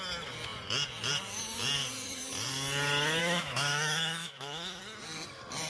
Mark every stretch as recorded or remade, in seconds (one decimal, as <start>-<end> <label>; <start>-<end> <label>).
0.0-3.2 recorded; 3.2-4.8 remade; 4.8-5.7 recorded